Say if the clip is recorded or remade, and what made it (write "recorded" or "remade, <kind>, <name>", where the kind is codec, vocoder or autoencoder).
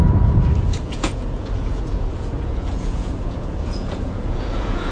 remade, vocoder, Vocos